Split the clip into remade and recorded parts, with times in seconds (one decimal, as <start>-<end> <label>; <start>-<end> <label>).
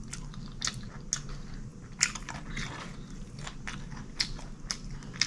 0.0-5.3 recorded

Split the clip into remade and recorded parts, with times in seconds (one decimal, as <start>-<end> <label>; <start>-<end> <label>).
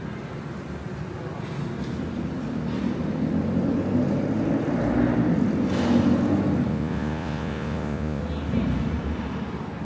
0.0-6.7 recorded; 6.7-8.2 remade; 8.2-9.8 recorded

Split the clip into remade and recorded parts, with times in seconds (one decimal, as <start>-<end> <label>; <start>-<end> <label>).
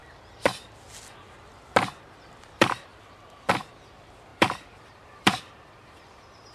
0.0-2.4 recorded; 2.4-2.9 remade; 2.9-3.5 recorded; 3.5-6.5 remade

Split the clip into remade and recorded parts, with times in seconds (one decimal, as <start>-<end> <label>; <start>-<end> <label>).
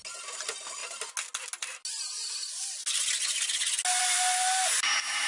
0.0-5.3 recorded